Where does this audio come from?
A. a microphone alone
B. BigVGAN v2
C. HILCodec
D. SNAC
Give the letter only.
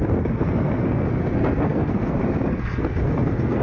D